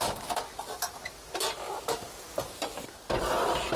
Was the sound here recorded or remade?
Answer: recorded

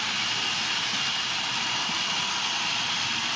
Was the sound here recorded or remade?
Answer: recorded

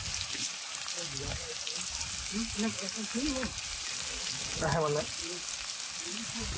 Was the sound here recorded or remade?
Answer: recorded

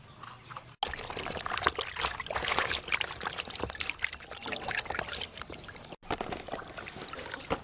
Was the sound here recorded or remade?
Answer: recorded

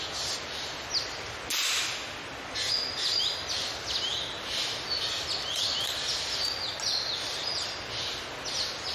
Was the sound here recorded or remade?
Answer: recorded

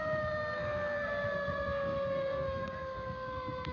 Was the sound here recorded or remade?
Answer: remade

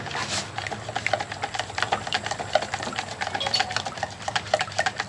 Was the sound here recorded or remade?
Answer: recorded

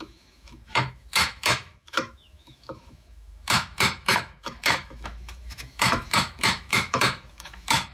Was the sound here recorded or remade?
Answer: remade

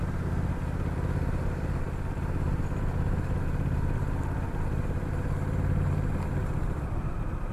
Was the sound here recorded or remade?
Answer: remade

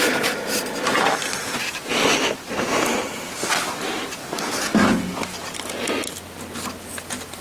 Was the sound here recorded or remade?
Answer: recorded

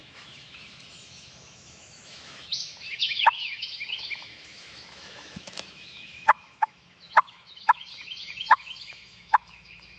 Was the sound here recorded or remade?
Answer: remade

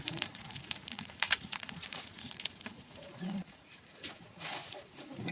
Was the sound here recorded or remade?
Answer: remade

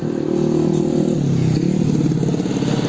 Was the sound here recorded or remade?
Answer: recorded